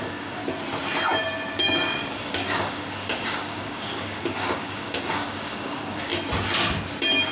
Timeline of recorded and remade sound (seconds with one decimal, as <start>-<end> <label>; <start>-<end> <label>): 0.0-0.4 remade; 0.4-1.5 recorded; 1.5-6.1 remade; 6.1-7.3 recorded